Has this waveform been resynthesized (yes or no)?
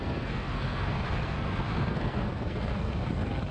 yes